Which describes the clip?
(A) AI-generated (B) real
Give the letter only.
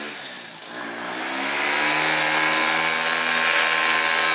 B